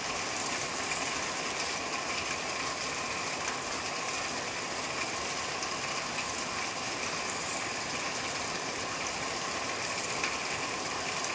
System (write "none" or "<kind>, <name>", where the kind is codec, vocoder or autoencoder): none